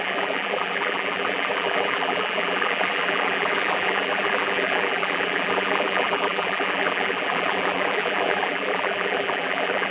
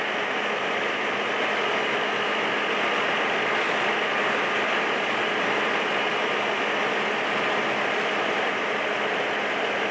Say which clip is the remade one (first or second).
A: first